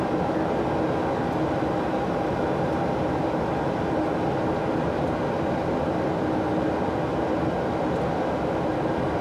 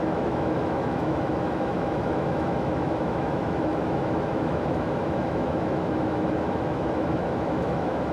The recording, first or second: first